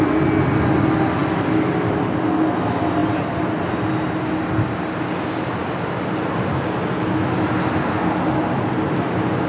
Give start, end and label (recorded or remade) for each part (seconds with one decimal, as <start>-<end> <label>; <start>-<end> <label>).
0.0-9.5 recorded